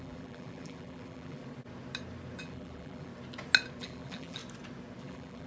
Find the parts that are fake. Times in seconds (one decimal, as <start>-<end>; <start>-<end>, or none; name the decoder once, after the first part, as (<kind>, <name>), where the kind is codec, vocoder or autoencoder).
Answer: 0.0-1.4 (vocoder, BigVGAN v2); 2.4-3.1; 3.8-4.4; 5.0-5.5